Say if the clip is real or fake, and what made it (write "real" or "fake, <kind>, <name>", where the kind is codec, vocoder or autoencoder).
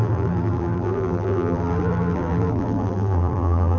fake, vocoder, BigVGAN v2